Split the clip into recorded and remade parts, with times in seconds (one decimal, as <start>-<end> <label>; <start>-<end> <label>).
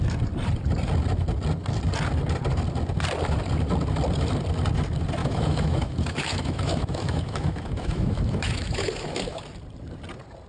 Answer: 0.0-5.2 recorded; 5.2-9.4 remade; 9.4-10.5 recorded